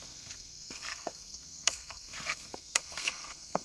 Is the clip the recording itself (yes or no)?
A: no